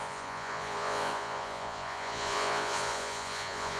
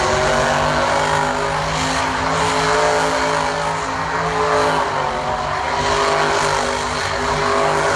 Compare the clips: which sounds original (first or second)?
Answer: second